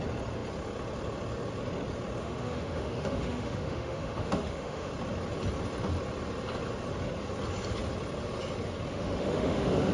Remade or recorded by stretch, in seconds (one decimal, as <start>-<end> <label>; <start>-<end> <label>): 0.0-2.2 recorded; 2.2-4.9 remade; 4.9-8.9 recorded; 8.9-9.9 remade